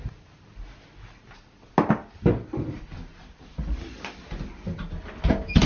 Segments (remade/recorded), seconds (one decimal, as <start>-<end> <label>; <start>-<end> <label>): 0.0-5.7 recorded